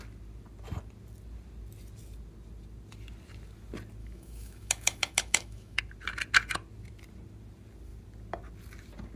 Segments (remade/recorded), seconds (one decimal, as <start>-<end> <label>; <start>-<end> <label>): 0.0-4.0 recorded; 4.0-5.8 remade; 5.8-9.2 recorded